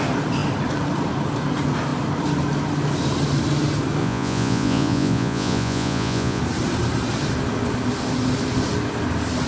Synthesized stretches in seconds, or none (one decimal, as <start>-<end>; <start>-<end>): 4.0-6.4